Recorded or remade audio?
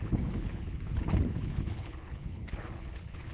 remade